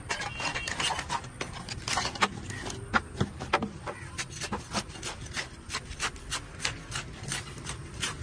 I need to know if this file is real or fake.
real